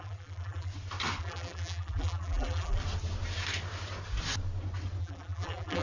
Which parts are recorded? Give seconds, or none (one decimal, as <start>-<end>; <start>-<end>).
0.7-1.2; 2.8-5.0